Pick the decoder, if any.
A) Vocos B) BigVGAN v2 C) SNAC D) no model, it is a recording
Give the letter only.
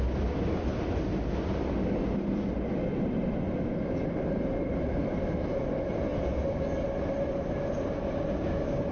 D